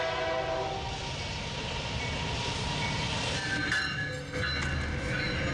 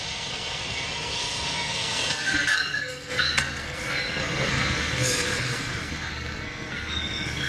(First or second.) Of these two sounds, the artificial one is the second